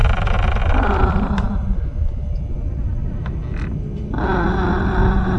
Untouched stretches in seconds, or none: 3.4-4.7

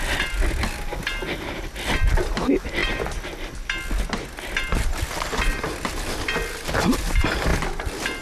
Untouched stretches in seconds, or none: 0.0-8.2

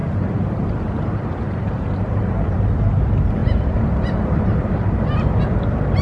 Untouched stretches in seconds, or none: 2.6-3.4; 5.4-6.0

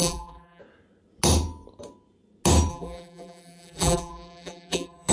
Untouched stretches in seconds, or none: 0.6-2.7

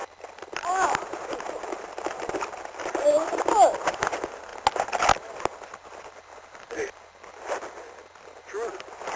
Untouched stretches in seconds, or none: 0.0-9.2

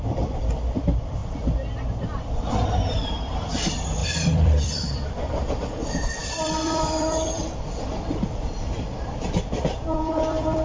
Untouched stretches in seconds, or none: 1.2-2.5

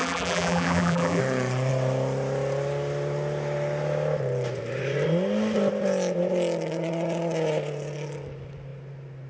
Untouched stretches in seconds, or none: 1.2-9.3

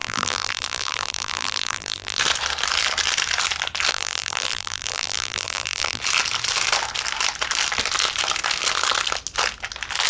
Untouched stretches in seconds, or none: 2.2-3.9; 6.0-10.1